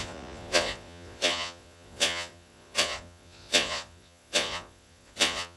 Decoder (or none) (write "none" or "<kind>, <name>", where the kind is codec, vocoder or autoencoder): vocoder, Vocos